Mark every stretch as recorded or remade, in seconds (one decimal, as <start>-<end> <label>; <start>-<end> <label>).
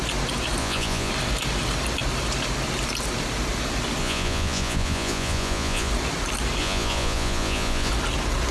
0.0-0.6 recorded; 0.6-1.1 remade; 1.1-4.0 recorded; 4.0-5.9 remade; 5.9-6.6 recorded; 6.6-7.9 remade; 7.9-8.5 recorded